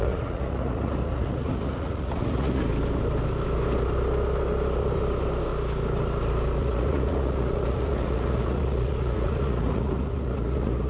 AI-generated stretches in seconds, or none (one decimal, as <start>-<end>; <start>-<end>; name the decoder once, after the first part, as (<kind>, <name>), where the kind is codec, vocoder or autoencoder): 0.0-2.7 (vocoder, Vocos); 6.6-10.9